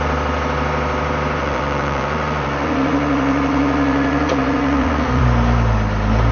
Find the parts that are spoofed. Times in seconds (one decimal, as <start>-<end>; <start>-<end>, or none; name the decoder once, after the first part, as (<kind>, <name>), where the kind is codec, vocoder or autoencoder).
1.4-5.2 (vocoder, Vocos)